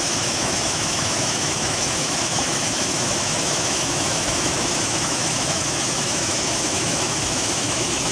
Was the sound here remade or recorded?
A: remade